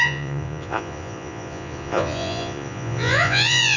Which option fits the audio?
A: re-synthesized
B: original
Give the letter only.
A